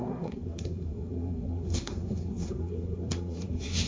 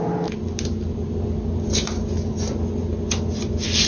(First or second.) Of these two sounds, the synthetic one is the first